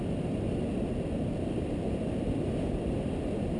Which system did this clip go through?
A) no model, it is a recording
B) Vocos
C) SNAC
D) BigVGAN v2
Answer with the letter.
A